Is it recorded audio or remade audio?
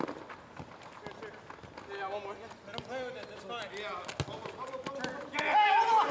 recorded